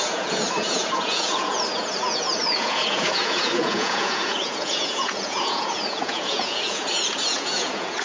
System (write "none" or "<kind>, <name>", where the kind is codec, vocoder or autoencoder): vocoder, Vocos